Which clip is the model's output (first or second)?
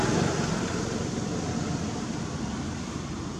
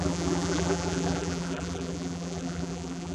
second